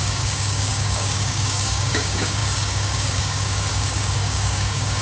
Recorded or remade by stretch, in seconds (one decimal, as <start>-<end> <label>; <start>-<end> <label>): 0.0-5.0 remade